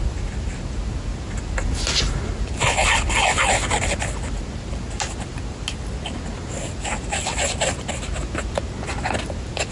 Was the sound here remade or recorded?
recorded